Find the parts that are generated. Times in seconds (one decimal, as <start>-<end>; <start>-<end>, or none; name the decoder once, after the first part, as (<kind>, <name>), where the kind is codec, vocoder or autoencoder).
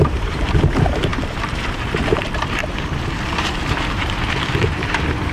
0.0-5.3 (vocoder, BigVGAN v2)